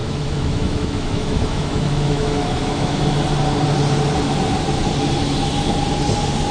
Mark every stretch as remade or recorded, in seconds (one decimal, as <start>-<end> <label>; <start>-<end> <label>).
0.0-3.0 remade; 3.0-6.5 recorded